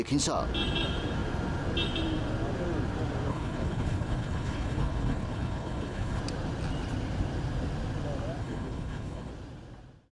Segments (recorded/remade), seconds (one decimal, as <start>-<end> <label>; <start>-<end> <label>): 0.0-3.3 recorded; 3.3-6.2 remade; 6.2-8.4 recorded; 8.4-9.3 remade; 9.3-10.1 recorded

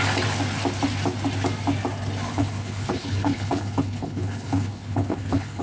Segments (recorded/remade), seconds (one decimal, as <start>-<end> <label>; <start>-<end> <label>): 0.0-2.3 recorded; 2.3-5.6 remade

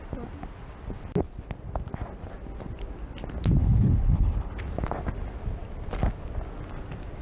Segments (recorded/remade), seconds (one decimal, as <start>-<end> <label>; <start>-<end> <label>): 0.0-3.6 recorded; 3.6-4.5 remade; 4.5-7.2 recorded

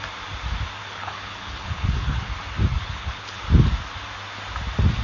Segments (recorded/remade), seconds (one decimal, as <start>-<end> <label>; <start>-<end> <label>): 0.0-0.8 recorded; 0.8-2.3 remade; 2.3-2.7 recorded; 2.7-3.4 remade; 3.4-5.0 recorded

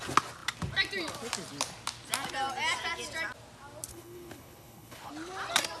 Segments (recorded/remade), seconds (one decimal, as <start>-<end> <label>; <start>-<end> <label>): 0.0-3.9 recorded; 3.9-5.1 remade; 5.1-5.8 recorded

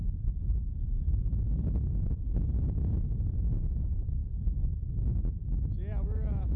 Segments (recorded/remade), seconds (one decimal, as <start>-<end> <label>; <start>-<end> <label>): 0.0-6.6 recorded

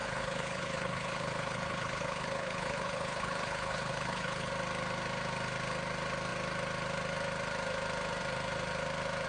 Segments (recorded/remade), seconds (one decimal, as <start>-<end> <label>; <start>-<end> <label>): 0.0-4.5 remade; 4.5-9.3 recorded